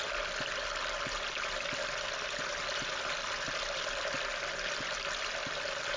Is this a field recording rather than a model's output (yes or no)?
yes